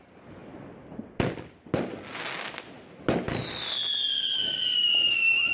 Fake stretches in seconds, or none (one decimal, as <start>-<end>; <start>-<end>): 4.4-5.1